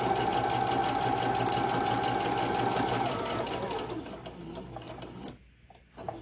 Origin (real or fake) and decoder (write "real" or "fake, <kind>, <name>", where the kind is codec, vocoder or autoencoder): real